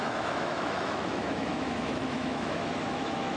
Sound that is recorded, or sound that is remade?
remade